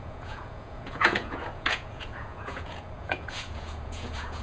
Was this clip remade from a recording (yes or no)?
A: yes